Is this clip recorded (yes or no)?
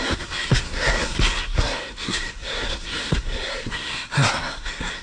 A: no